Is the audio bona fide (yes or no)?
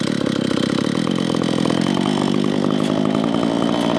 yes